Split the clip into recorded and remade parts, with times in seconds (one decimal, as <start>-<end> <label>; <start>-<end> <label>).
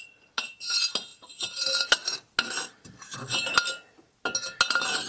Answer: 0.0-5.1 recorded